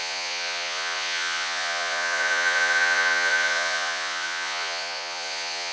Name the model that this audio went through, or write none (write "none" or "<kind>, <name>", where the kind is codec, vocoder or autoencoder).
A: vocoder, Vocos